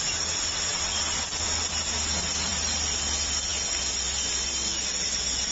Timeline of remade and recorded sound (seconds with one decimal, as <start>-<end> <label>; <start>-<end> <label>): 0.0-0.7 recorded; 0.7-1.3 remade; 1.3-5.5 recorded